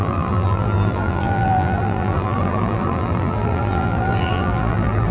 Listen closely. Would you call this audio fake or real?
fake